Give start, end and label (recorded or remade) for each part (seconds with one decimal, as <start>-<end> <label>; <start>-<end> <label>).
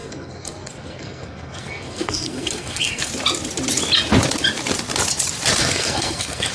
0.0-3.1 remade; 3.1-5.6 recorded; 5.6-6.5 remade